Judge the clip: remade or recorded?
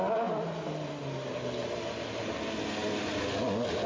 recorded